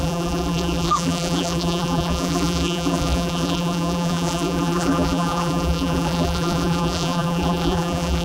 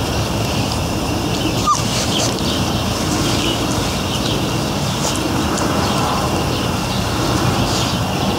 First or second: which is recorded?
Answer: second